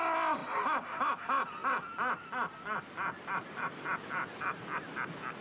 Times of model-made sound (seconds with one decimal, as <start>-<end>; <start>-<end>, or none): none